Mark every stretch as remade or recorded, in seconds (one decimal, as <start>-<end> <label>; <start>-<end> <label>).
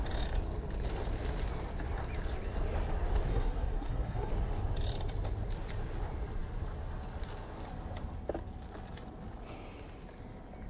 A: 0.0-3.3 recorded; 3.3-4.3 remade; 4.3-10.7 recorded